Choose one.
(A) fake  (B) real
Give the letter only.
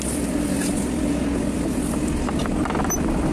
B